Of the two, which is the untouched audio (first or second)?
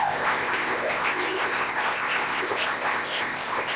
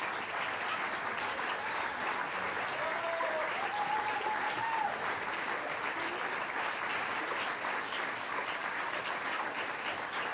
second